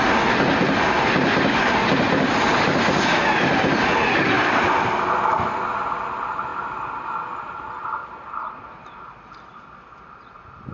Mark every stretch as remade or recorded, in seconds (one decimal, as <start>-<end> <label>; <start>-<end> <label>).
0.0-10.7 recorded